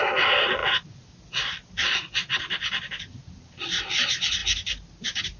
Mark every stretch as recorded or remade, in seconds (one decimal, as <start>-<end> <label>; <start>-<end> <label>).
0.0-5.4 recorded